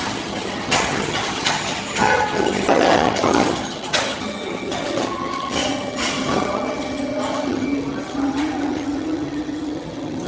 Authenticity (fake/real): fake